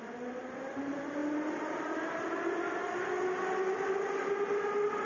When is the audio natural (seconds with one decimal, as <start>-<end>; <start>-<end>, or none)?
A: 0.0-5.0

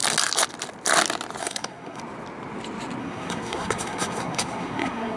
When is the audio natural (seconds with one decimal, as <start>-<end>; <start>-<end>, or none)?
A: 0.0-1.4; 2.0-3.0

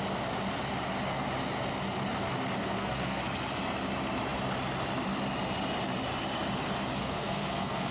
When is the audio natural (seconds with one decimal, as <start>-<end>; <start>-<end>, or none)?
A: 0.0-2.6; 3.2-7.0

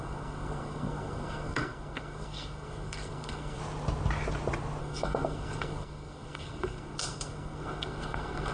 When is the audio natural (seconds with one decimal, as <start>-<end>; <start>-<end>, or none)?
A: 3.6-4.8

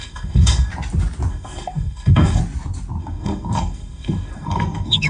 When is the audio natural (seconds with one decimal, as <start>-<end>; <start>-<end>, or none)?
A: 0.7-1.3; 2.4-3.0

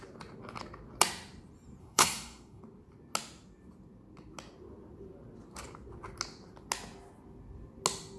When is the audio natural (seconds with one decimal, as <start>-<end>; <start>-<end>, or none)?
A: 0.0-1.8; 2.6-8.2

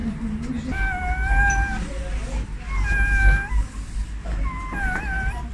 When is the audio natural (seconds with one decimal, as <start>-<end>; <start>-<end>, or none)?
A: 0.0-5.5